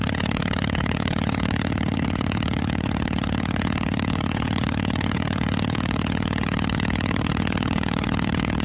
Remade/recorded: remade